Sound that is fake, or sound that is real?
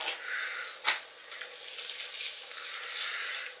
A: real